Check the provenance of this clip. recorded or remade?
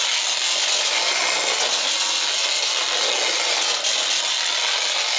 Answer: recorded